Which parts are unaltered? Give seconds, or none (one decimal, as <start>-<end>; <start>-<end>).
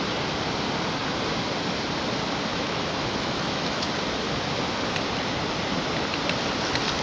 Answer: 0.0-2.5; 3.9-7.0